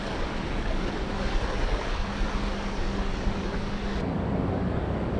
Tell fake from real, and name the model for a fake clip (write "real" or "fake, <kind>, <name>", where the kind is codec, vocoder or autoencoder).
fake, codec, DAC